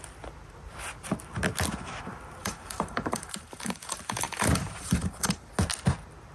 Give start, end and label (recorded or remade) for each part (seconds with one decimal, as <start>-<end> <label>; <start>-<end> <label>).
0.0-2.4 recorded; 2.4-5.5 remade; 5.5-6.3 recorded